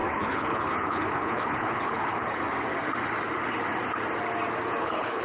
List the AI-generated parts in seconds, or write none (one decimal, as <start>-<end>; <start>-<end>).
0.0-2.4; 4.8-5.2